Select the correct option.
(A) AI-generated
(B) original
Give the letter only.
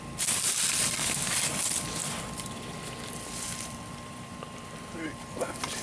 A